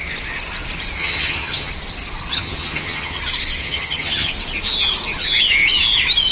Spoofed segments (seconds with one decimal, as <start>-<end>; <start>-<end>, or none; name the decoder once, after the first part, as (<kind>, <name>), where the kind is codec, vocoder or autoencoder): 1.0-1.7 (vocoder, HiFi-GAN); 2.3-3.2; 3.6-4.3